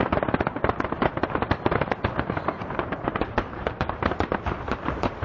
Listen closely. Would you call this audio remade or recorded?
remade